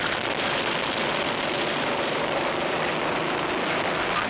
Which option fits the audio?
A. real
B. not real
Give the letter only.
B